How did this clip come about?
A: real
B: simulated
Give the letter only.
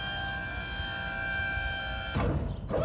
A